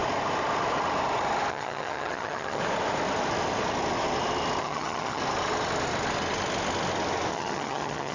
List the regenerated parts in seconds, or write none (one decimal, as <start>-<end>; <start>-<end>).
1.5-2.6; 4.6-5.2; 7.3-8.1